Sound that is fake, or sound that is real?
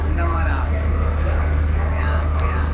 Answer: fake